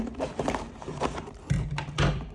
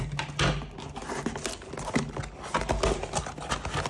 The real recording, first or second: second